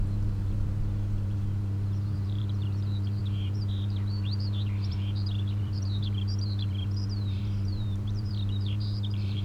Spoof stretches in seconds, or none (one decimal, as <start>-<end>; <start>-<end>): 0.0-9.4